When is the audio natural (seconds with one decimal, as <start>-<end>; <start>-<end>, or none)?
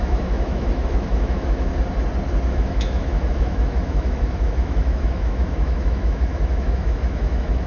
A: 1.7-2.5